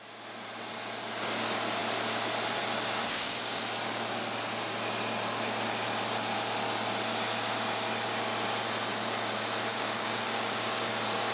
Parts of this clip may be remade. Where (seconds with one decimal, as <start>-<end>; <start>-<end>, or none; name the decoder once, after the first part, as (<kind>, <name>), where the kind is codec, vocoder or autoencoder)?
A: 3.0-3.6 (codec, DAC); 9.7-10.9